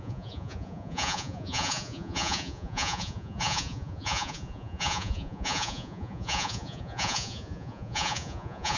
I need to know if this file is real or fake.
fake